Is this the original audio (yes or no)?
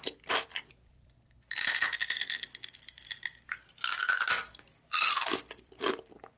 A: no